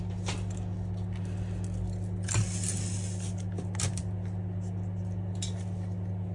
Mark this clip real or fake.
real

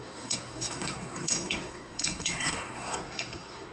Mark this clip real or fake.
fake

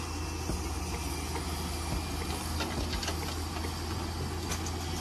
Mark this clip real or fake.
real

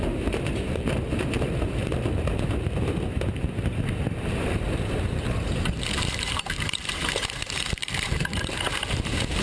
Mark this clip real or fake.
fake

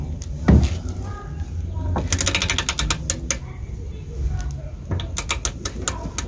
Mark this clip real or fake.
real